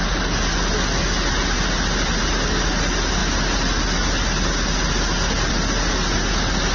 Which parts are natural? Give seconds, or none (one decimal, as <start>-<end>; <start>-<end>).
0.0-6.7